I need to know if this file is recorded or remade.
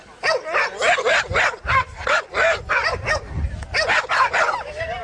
recorded